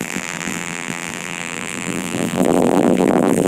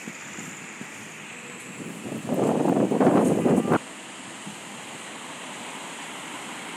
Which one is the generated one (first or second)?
first